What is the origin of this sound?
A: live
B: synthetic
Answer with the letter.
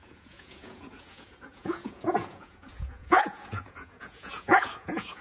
B